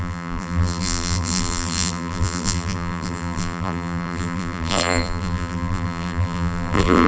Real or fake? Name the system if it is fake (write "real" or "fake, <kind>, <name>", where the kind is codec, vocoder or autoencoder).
fake, vocoder, BigVGAN v2